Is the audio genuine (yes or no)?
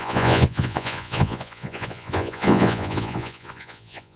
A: no